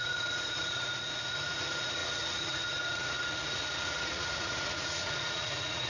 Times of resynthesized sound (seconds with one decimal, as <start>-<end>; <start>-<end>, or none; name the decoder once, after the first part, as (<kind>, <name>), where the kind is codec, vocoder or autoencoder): 0.0-5.9 (vocoder, Vocos)